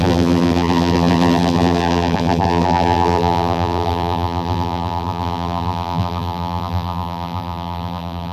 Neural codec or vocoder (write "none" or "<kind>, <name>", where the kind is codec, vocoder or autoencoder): vocoder, BigVGAN v2